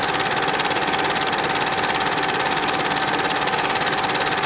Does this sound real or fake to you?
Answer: real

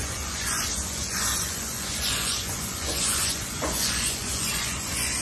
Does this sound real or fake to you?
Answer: fake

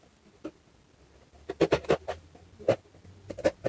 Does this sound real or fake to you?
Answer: real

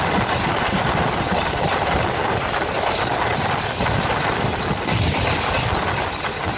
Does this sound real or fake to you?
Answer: real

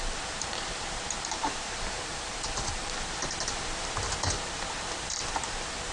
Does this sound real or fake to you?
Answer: fake